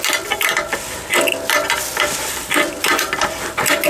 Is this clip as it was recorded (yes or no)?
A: yes